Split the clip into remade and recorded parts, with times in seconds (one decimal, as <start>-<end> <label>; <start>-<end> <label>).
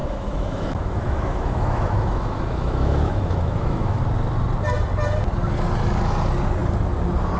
0.0-4.0 remade; 4.0-7.4 recorded